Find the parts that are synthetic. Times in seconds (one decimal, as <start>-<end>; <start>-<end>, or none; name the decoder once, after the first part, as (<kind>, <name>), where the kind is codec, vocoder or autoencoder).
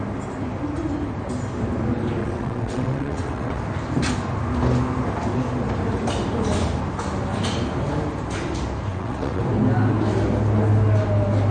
2.2-3.6 (vocoder, WaveNeXt); 8.9-9.4